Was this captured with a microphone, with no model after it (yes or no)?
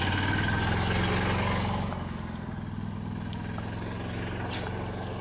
yes